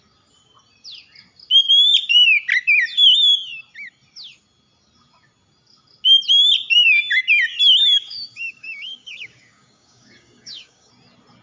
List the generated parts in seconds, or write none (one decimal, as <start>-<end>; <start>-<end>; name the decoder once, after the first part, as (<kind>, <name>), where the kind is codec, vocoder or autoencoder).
7.8-10.9 (codec, DAC)